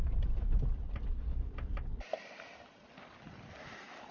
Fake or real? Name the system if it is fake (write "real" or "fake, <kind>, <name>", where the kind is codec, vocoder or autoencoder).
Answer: real